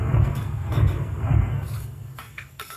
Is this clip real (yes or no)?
no